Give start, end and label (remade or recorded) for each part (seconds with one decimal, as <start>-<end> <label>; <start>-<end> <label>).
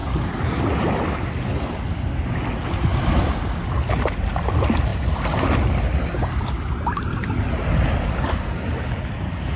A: 0.0-9.6 recorded